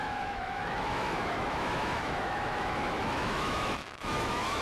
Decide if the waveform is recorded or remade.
remade